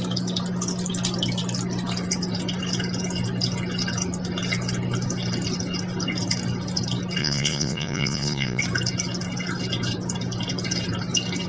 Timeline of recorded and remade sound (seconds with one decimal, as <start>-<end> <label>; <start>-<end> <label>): 0.0-7.2 recorded; 7.2-8.6 remade; 8.6-11.5 recorded